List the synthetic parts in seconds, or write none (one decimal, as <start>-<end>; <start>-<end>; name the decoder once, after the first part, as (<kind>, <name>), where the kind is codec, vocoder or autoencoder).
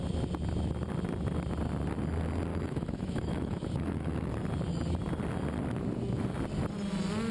2.5-4.3 (autoencoder, DAC-VAE)